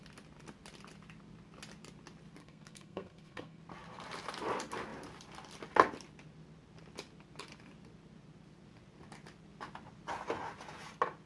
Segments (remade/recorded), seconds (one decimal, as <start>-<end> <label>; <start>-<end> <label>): 0.0-2.4 recorded; 2.4-3.6 remade; 3.6-11.3 recorded